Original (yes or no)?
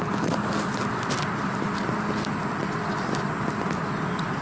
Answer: yes